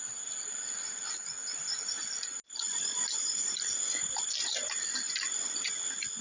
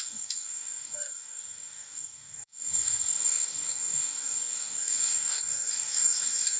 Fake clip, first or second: second